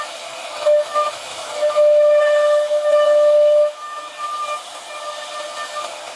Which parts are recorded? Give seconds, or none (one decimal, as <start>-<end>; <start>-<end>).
0.0-0.4; 4.1-6.2